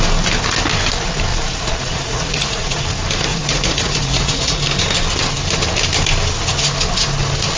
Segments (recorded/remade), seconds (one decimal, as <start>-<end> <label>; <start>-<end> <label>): 0.0-1.3 recorded; 1.3-2.8 remade; 2.8-3.3 recorded; 3.3-4.6 remade; 4.6-7.6 recorded